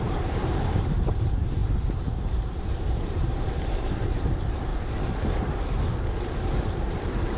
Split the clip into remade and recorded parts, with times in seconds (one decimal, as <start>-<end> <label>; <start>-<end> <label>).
0.0-4.7 remade; 4.7-7.4 recorded